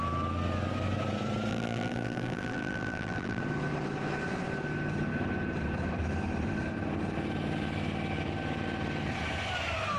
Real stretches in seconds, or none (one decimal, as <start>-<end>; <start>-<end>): 0.0-1.5; 3.4-10.0